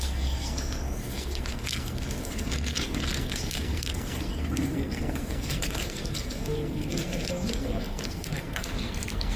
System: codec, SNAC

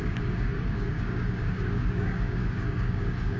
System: codec, DAC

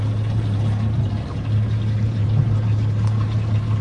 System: none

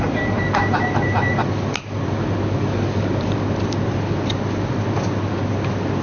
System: vocoder, BigVGAN v2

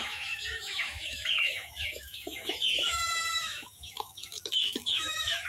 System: autoencoder, DAC-VAE